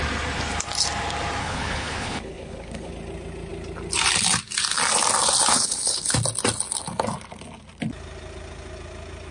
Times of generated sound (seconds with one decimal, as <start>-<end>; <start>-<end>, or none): 1.4-2.9; 5.5-6.1